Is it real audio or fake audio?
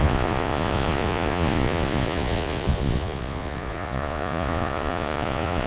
fake